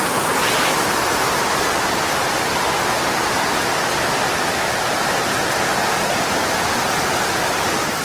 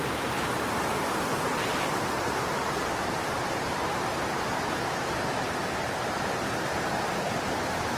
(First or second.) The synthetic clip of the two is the second